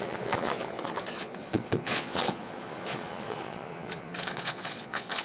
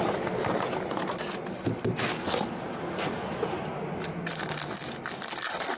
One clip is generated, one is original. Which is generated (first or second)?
first